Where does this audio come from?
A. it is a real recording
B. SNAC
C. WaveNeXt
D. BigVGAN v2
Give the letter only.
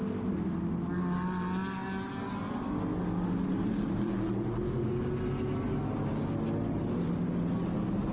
A